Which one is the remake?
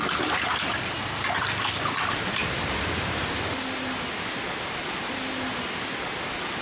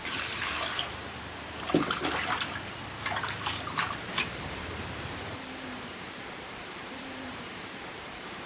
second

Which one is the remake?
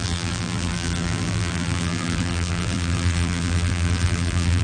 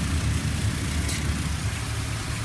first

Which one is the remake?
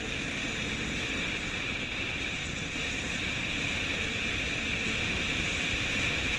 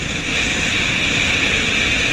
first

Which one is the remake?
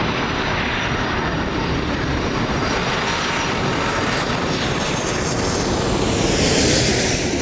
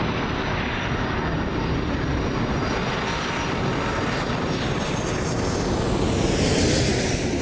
first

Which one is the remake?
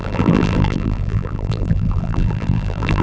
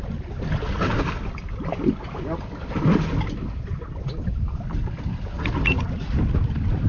first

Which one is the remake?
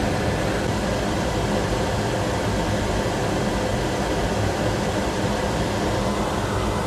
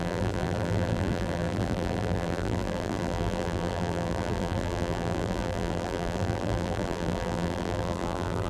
second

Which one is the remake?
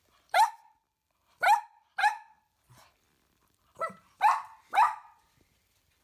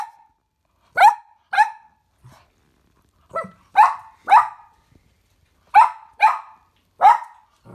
first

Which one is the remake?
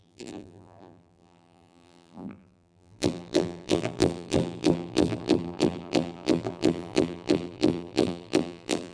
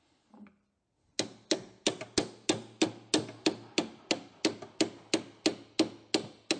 first